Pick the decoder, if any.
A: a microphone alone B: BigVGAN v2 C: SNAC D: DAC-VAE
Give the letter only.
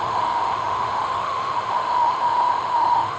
D